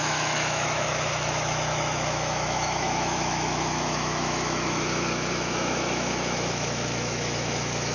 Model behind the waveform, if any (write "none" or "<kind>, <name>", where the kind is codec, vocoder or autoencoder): autoencoder, DAC-VAE